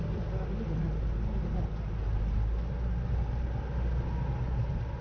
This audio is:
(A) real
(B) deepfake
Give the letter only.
A